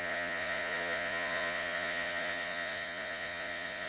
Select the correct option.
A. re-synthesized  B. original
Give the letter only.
A